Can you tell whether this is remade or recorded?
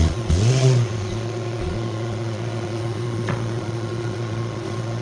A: remade